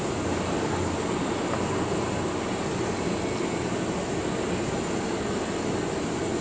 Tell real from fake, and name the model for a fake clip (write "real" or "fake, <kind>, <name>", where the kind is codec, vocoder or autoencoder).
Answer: real